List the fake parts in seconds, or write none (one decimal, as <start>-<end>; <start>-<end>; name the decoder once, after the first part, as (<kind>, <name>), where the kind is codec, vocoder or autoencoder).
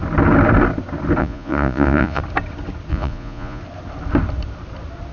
1.2-2.2 (vocoder, Vocos); 2.9-3.6